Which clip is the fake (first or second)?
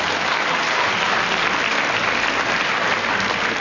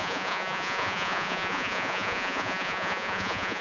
second